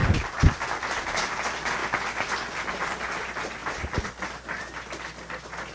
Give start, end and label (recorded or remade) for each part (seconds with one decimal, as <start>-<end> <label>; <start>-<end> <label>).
0.0-5.7 recorded